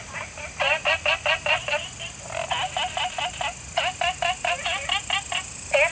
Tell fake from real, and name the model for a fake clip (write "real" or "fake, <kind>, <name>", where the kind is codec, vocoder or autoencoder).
real